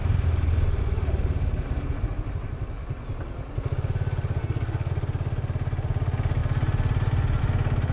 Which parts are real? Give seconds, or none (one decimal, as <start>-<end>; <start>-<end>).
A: 0.0-4.4; 4.9-7.9